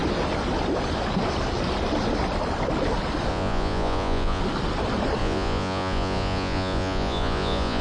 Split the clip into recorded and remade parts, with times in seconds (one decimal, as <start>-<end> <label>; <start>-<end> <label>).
0.0-3.3 recorded; 3.3-4.4 remade; 4.4-5.2 recorded; 5.2-7.8 remade